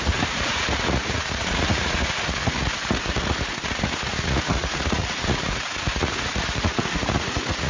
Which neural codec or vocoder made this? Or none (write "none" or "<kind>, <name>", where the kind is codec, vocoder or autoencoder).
vocoder, Vocos